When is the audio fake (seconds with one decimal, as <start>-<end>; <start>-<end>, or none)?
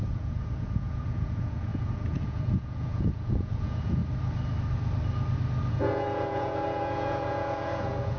0.0-4.0; 5.7-8.2